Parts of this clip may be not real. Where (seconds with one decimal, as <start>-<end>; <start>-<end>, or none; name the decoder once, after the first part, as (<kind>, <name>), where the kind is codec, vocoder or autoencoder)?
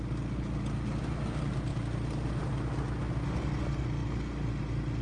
none